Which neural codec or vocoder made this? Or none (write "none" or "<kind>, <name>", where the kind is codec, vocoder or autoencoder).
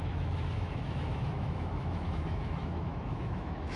autoencoder, DAC-VAE